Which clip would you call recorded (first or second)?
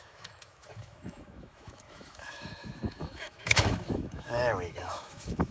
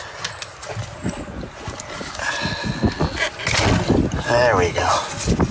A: second